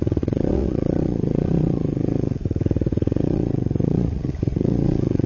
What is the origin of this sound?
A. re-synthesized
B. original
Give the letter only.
A